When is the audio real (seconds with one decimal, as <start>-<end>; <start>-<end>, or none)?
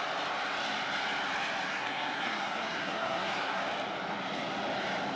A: 0.0-1.7; 3.6-5.2